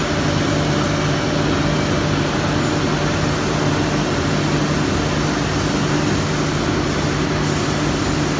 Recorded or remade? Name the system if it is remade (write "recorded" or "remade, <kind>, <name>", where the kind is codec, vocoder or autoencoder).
recorded